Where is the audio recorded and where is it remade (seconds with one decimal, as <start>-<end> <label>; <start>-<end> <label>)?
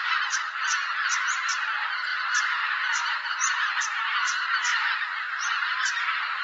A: 0.0-6.4 recorded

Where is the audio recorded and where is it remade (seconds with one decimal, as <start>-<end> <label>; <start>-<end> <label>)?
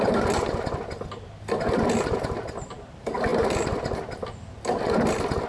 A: 0.0-5.5 recorded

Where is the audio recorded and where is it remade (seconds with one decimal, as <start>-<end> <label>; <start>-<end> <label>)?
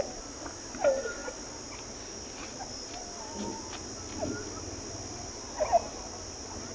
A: 0.0-6.7 recorded